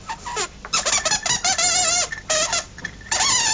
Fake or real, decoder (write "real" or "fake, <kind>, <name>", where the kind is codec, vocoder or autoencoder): fake, vocoder, BigVGAN v2